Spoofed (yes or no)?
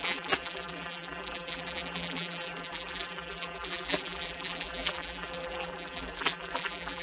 yes